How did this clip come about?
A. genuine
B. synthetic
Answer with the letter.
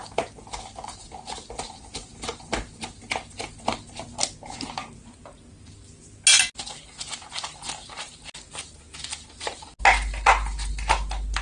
A